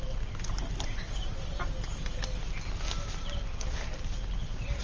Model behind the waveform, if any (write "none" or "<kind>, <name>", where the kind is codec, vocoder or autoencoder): none